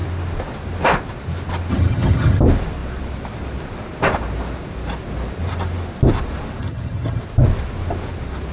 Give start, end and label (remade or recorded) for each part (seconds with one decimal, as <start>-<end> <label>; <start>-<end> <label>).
0.0-1.7 recorded; 1.7-2.4 remade; 2.4-6.6 recorded; 6.6-7.2 remade; 7.2-8.5 recorded